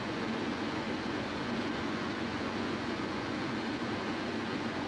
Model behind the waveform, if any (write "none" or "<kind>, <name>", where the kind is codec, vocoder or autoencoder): vocoder, Vocos